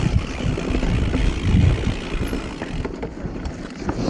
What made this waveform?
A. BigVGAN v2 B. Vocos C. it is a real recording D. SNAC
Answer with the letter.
C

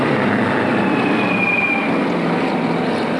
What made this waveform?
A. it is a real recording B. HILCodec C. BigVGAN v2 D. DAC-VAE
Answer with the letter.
C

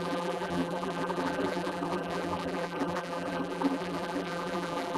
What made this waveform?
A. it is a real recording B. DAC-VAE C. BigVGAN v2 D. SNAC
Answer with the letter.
C